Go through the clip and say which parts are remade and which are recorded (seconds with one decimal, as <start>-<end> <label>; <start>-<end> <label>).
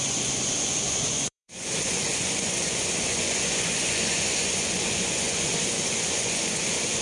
0.0-7.0 remade